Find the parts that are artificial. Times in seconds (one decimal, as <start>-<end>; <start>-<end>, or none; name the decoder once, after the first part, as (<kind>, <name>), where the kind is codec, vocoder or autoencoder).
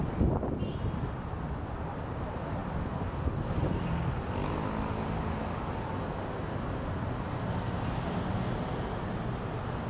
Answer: none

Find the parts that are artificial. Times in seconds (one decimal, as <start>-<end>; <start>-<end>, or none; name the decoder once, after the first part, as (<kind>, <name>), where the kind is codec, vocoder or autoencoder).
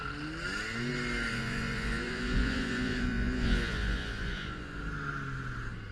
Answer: 1.3-4.8 (vocoder, Vocos)